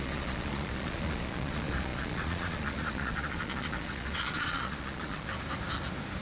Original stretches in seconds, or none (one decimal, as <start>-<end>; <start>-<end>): 5.3-6.2